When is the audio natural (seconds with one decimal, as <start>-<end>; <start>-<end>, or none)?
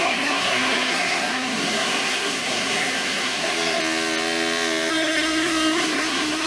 3.8-4.9